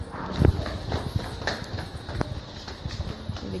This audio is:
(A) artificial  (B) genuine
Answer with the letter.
B